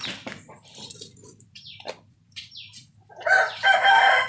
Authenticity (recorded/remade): remade